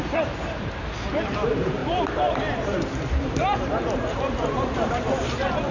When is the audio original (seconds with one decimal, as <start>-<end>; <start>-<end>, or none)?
none